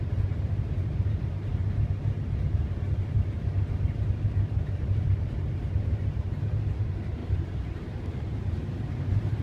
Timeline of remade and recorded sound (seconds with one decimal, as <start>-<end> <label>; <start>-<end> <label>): 0.0-1.6 remade; 1.6-4.6 recorded; 4.6-9.4 remade